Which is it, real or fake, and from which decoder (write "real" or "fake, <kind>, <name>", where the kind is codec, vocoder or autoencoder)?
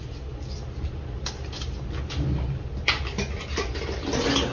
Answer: real